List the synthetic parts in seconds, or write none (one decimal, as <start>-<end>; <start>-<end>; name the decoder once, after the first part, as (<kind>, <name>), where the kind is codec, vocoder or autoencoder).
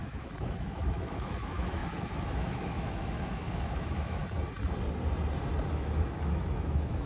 0.0-4.2 (autoencoder, DAC-VAE); 5.7-7.1